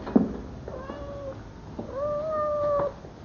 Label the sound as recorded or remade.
recorded